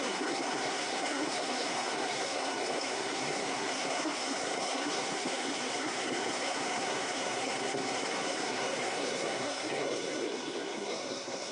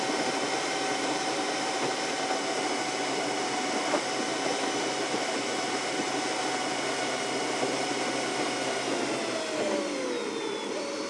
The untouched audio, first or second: second